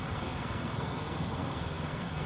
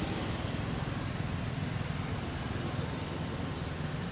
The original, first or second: second